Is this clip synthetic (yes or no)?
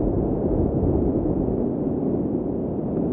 no